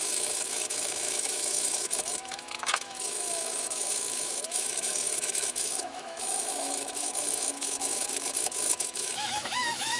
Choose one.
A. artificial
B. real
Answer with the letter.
A